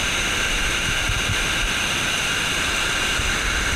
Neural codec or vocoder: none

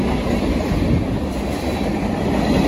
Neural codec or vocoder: none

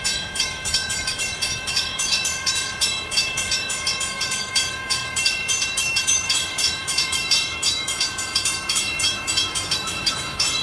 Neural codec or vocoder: autoencoder, DAC-VAE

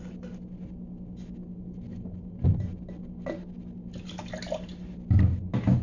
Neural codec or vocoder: none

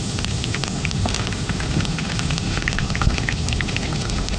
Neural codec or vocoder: autoencoder, DAC-VAE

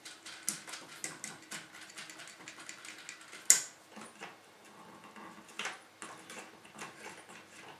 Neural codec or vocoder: none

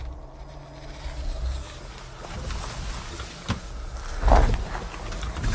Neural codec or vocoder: none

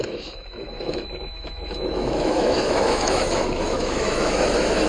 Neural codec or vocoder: autoencoder, DAC-VAE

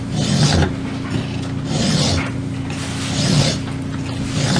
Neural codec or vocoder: none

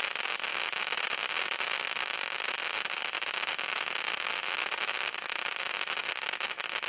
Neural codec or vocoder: none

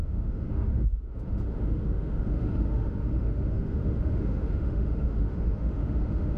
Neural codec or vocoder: autoencoder, DAC-VAE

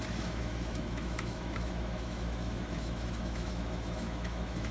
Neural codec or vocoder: autoencoder, DAC-VAE